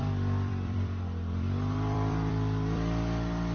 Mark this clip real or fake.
fake